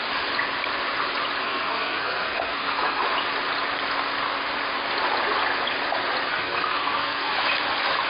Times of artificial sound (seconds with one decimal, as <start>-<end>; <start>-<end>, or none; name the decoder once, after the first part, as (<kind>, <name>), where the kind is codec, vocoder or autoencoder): 1.4-3.0 (codec, SNAC); 6.3-7.3